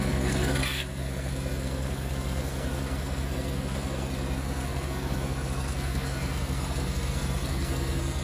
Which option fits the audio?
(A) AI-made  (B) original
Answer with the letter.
A